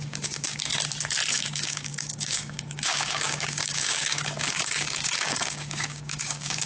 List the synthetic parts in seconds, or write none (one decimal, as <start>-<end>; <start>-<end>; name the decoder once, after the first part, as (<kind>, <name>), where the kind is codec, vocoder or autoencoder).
0.0-0.7 (codec, DAC); 1.3-6.7